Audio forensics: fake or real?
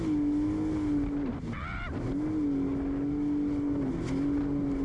real